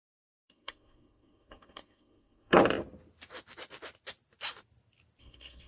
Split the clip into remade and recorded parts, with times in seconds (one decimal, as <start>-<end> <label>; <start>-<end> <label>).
0.0-2.6 remade; 2.6-5.2 recorded; 5.2-5.7 remade

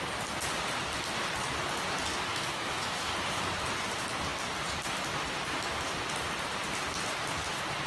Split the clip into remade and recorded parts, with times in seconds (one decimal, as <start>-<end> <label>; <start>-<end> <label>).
0.0-2.3 recorded; 2.3-3.1 remade; 3.1-7.9 recorded

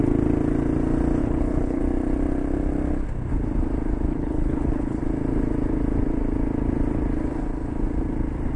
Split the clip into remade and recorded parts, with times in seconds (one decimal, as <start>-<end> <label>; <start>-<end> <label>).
0.0-1.2 recorded; 1.2-1.8 remade; 1.8-4.1 recorded; 4.1-5.0 remade; 5.0-8.6 recorded

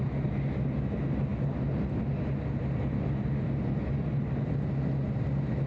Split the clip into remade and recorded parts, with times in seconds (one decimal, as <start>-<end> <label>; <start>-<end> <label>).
0.0-5.7 recorded

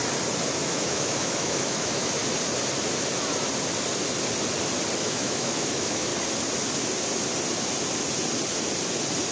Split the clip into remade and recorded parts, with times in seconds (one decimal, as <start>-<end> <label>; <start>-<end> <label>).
0.0-0.6 recorded; 0.6-2.2 remade; 2.2-5.0 recorded; 5.0-6.1 remade; 6.1-9.3 recorded